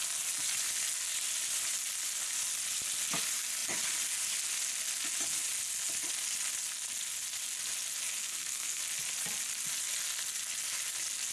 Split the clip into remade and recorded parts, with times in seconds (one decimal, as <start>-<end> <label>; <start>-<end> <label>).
0.0-8.2 recorded; 8.2-8.8 remade; 8.8-11.3 recorded